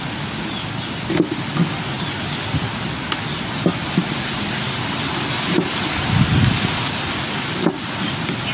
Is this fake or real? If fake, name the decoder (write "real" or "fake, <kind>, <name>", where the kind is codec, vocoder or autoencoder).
real